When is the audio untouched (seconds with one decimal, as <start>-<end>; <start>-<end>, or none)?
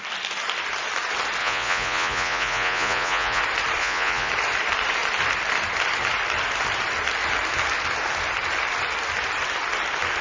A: 0.0-1.4; 3.4-3.8; 4.3-10.2